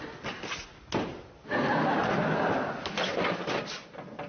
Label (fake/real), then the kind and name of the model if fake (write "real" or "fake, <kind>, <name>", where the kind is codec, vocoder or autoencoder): real